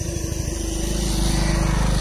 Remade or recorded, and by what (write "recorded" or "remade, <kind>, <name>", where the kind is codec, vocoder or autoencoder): recorded